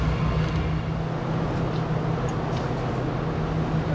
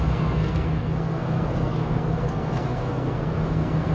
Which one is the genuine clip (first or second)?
first